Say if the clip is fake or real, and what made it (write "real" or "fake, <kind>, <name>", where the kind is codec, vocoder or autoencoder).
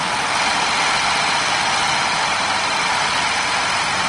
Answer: real